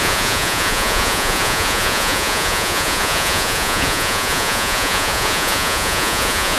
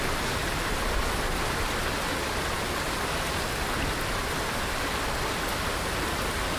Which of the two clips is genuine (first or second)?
second